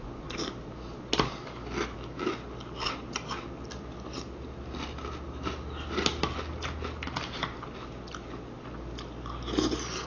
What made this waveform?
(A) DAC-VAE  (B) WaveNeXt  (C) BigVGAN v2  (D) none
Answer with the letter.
D